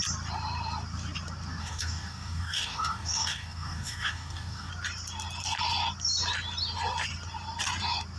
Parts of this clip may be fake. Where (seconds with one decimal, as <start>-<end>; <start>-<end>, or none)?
1.6-4.7